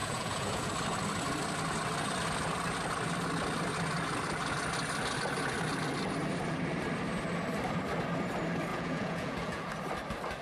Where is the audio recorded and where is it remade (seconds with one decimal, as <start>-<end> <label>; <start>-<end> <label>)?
0.0-0.7 remade; 0.7-8.7 recorded; 8.7-9.7 remade; 9.7-10.4 recorded